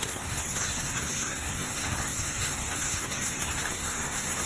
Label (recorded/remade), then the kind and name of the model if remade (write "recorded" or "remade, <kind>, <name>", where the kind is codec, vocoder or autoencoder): remade, codec, SNAC